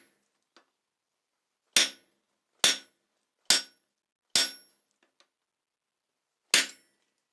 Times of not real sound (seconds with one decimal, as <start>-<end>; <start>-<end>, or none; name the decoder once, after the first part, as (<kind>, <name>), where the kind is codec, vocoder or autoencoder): none